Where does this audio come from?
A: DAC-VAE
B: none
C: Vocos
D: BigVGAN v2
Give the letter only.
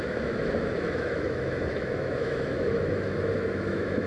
A